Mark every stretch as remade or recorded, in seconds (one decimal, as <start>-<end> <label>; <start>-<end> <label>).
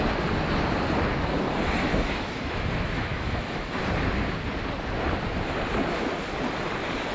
0.0-1.9 recorded; 1.9-3.8 remade; 3.8-7.1 recorded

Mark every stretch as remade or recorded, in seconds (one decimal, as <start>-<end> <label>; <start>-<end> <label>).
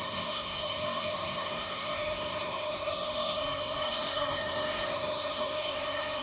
0.0-6.2 remade